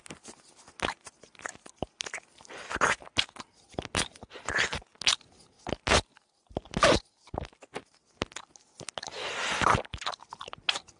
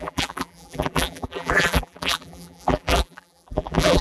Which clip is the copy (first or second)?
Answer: second